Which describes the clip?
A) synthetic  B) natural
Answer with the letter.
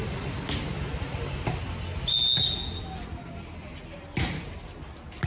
B